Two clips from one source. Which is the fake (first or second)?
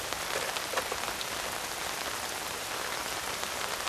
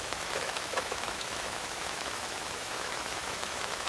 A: second